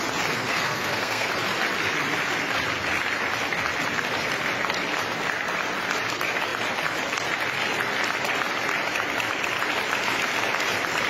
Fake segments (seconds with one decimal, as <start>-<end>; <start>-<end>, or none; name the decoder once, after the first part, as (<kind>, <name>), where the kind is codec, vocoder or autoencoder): 0.5-1.3 (codec, SNAC)